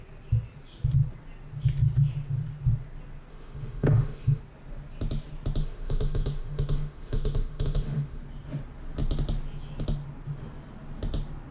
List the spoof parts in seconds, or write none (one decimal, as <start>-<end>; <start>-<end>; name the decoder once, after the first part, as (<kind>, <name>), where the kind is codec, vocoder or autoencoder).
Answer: 3.3-4.4 (autoencoder, DAC-VAE); 5.6-8.2